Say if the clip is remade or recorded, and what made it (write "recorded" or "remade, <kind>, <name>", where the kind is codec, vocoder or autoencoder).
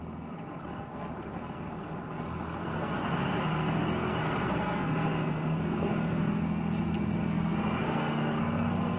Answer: remade, codec, SNAC